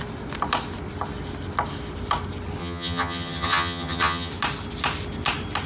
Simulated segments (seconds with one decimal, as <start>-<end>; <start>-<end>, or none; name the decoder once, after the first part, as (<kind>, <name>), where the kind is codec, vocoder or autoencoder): 2.6-4.3 (vocoder, HiFi-GAN)